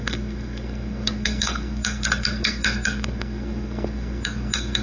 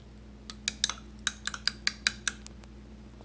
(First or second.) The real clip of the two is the second